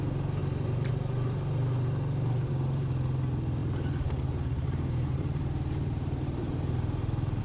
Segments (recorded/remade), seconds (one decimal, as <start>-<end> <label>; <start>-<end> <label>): 0.0-0.4 recorded; 0.4-0.9 remade; 0.9-3.6 recorded; 3.6-7.4 remade